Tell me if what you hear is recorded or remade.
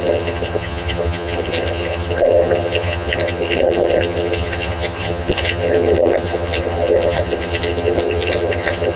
remade